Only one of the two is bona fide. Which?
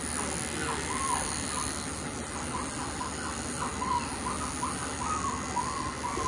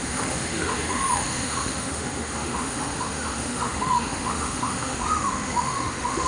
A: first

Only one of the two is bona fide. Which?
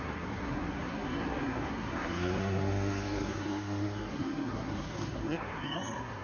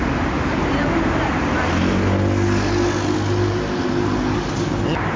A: second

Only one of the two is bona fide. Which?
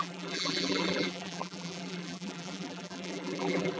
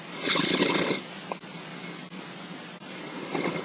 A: second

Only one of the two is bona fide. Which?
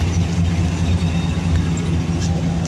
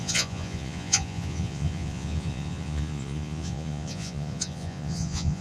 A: first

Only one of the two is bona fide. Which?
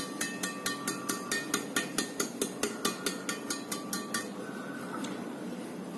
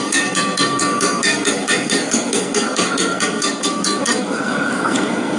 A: first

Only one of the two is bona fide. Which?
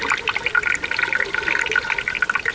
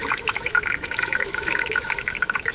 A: first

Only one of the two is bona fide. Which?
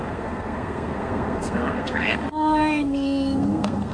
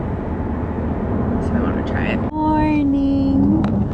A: second